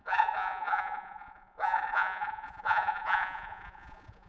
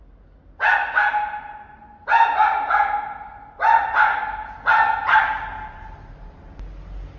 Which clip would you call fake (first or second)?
first